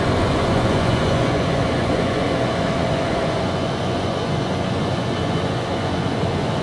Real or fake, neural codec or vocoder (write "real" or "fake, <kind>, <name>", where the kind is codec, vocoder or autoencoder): fake, vocoder, Vocos